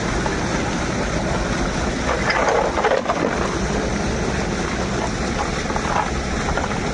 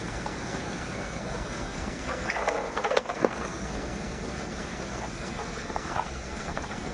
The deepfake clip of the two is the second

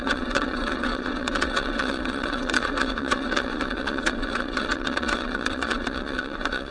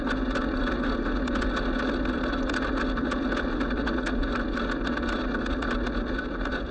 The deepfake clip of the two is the first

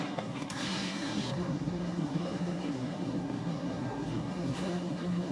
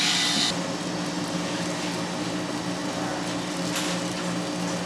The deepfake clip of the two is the first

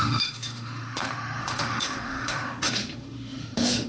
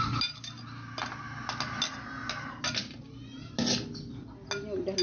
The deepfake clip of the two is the first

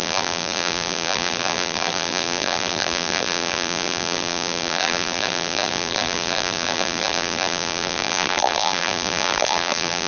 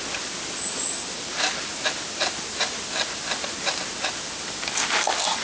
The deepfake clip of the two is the first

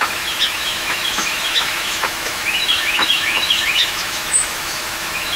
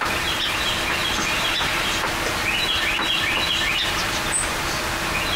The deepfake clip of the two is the first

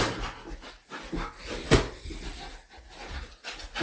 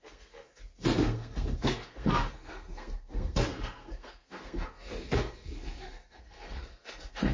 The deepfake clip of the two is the second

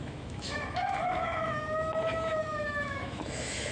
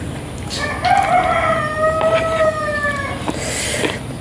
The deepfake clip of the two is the first